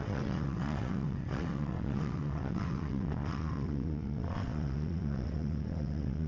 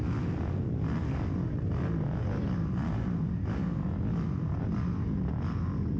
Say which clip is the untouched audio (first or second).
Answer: second